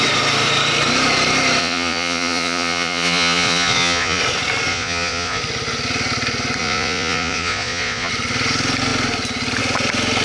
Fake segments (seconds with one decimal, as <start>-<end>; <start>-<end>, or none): 1.6-4.2; 4.7-5.4; 6.6-8.1